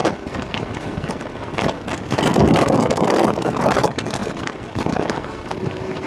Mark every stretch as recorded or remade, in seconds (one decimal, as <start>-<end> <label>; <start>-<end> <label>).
0.0-6.1 remade